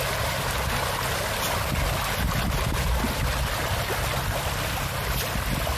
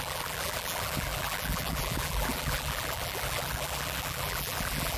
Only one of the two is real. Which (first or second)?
first